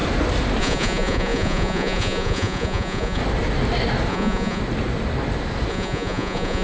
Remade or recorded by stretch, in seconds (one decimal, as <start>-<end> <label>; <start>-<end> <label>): 0.0-0.6 recorded; 0.6-3.2 remade; 3.2-4.1 recorded; 4.1-4.6 remade; 4.6-5.7 recorded; 5.7-6.6 remade